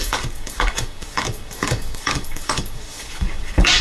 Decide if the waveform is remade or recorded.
remade